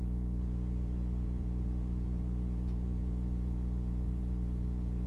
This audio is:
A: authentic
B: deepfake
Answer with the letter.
B